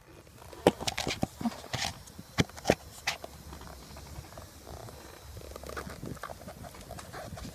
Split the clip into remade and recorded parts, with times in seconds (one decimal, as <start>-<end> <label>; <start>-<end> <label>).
0.0-7.5 recorded